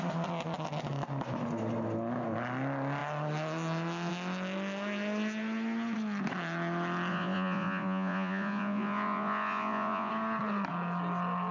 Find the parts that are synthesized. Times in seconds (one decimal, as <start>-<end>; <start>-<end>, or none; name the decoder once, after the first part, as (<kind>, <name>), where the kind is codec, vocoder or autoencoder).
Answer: 7.1-10.1 (vocoder, Vocos)